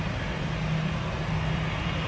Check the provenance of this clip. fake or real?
real